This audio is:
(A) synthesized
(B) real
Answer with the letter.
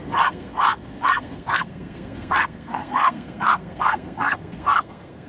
A